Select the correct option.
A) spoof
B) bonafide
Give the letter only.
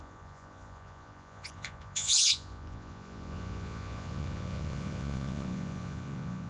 A